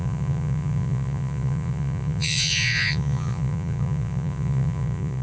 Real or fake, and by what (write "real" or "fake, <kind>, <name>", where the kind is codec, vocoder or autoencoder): fake, vocoder, Vocos